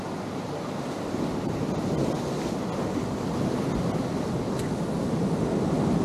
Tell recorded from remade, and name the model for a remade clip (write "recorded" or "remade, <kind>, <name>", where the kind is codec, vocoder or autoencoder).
recorded